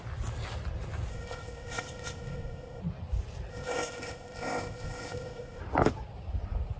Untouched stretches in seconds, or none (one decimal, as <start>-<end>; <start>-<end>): 0.0-1.1; 2.8-3.5; 5.6-6.8